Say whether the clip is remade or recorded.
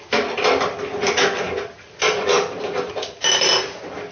recorded